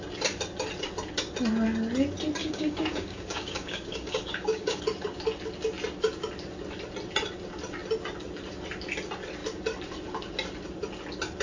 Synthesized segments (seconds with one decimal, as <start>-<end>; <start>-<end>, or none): 2.4-4.8